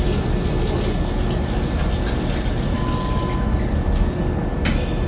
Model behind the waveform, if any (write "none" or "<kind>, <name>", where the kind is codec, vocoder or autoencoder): none